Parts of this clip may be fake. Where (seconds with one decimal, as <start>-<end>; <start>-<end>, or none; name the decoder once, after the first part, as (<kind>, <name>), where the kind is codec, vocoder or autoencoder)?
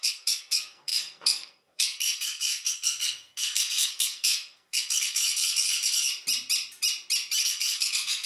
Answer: 0.0-6.1 (codec, SNAC); 7.4-8.3